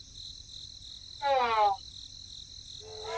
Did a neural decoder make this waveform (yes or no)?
no